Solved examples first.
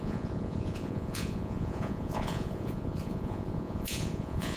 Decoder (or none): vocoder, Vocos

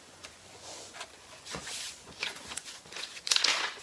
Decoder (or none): vocoder, Vocos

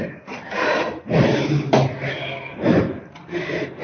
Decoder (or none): none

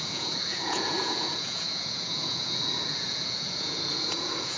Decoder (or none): vocoder, Vocos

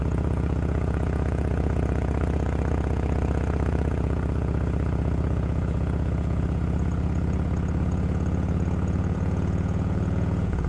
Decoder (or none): vocoder, Vocos